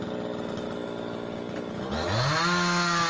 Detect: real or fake real